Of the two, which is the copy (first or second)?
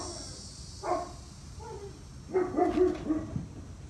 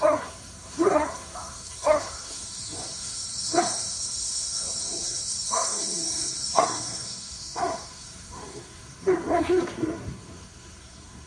second